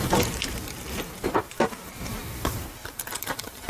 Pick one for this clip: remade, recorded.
remade